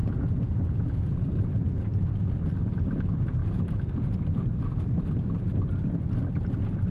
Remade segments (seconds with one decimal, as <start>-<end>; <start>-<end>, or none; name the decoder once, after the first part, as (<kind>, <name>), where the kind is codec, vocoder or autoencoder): 0.0-1.3 (vocoder, Vocos)

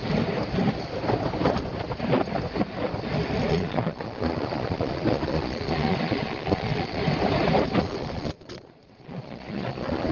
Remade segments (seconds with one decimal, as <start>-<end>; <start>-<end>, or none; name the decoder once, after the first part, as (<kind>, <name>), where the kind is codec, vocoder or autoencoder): 3.5-7.0 (vocoder, Vocos); 7.8-10.1

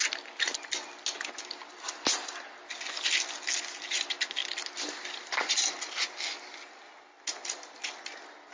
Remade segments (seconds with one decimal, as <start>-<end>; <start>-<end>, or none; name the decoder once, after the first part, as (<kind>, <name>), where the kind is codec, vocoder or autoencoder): none

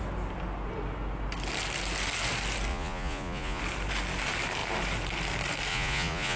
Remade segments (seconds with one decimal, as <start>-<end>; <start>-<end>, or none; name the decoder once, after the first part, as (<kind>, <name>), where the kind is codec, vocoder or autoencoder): 2.7-3.6 (vocoder, Vocos); 5.7-6.4

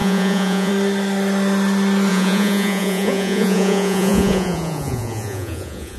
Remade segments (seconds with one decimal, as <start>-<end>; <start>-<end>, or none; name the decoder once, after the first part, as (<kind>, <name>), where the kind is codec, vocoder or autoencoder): 0.0-0.7 (vocoder, Vocos); 2.1-6.0